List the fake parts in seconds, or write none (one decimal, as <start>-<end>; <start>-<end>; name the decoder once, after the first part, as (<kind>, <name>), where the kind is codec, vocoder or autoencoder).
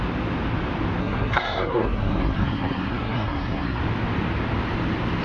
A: 1.0-3.8 (codec, SNAC)